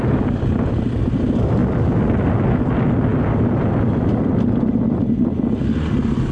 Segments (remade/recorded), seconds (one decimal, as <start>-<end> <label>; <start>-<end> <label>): 0.0-6.3 recorded

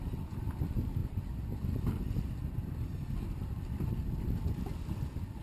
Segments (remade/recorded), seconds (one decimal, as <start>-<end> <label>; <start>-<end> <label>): 0.0-5.4 recorded

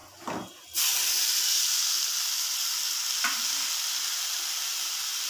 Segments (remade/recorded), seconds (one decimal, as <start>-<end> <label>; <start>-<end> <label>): 0.0-5.3 recorded

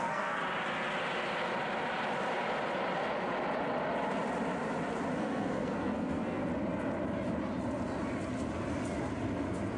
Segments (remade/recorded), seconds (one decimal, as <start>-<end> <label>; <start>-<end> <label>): 0.0-0.4 remade; 0.4-5.2 recorded; 5.2-6.4 remade; 6.4-9.8 recorded

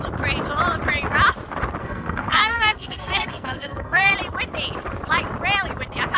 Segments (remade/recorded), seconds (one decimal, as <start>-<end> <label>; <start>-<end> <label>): 0.0-1.8 recorded; 1.8-4.1 remade; 4.1-6.2 recorded